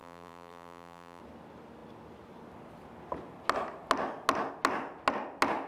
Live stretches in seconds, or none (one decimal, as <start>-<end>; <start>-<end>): 1.2-5.7